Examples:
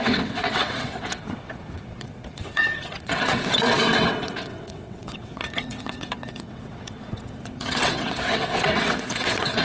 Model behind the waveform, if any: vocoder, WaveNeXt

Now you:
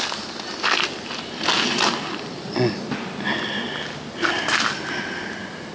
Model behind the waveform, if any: none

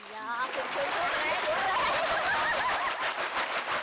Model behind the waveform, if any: none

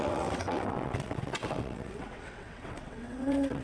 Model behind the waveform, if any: vocoder, WaveNeXt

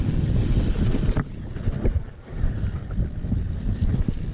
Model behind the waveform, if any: none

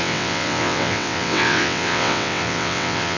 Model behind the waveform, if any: vocoder, WaveNeXt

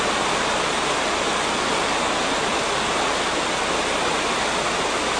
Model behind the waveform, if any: none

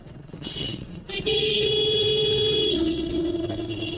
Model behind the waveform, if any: vocoder, WaveNeXt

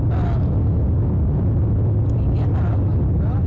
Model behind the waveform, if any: none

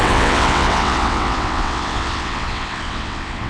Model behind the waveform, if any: vocoder, WaveNeXt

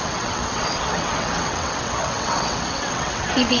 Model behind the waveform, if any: vocoder, WaveNeXt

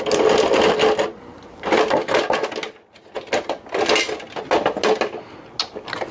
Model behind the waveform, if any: none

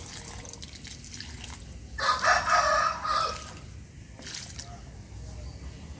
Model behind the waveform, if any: none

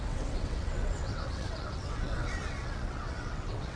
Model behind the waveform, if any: vocoder, WaveNeXt